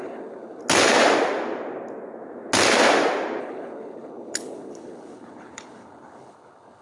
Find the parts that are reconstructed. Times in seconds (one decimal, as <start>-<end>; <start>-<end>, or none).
0.0-0.6; 3.4-6.8